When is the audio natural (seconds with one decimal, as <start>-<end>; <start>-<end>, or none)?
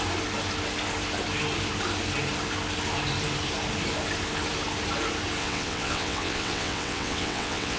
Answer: 0.0-5.4